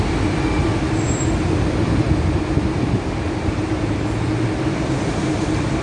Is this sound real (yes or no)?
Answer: no